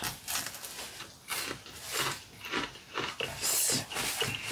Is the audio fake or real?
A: real